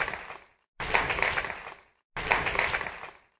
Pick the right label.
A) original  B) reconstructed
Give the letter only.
A